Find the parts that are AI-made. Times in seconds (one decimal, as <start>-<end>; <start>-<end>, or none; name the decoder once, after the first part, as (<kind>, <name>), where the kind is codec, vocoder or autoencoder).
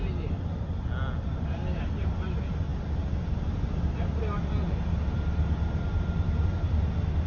none